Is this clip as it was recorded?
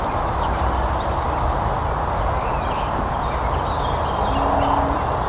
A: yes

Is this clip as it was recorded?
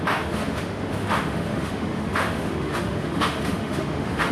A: no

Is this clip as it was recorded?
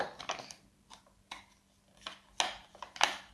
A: yes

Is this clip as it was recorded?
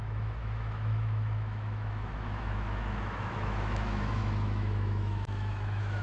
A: no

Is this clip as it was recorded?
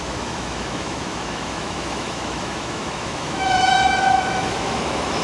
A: no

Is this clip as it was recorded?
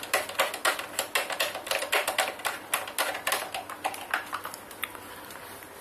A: yes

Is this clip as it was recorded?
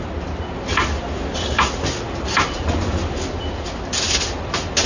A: yes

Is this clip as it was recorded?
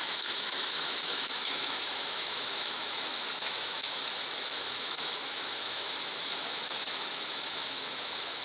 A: no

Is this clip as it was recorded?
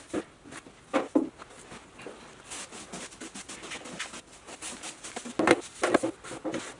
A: yes